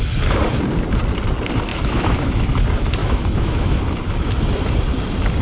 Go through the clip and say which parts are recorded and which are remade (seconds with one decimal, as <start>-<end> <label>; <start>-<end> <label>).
0.0-1.7 recorded; 1.7-2.5 remade; 2.5-3.0 recorded; 3.0-3.8 remade; 3.8-5.4 recorded